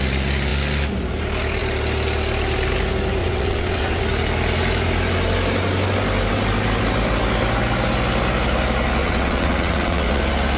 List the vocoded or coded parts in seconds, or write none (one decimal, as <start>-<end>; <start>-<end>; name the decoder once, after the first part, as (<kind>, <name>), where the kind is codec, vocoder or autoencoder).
3.2-4.0 (vocoder, WaveNeXt); 9.0-10.2